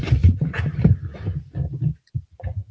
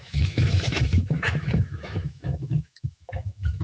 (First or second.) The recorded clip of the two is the first